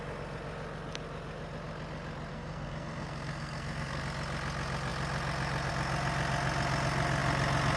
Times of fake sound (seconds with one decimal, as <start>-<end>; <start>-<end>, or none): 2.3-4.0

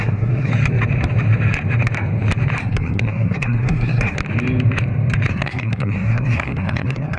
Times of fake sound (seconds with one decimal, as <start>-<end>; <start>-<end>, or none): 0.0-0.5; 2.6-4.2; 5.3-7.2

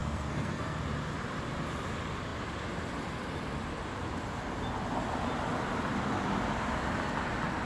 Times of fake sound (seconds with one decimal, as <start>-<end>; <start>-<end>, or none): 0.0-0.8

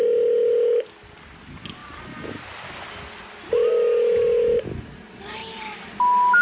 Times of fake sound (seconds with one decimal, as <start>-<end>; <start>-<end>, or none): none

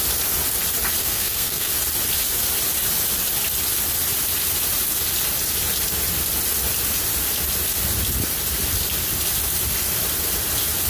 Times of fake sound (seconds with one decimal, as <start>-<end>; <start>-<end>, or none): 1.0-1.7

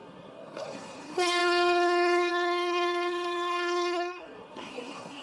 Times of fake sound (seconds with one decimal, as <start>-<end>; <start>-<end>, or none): 0.0-5.2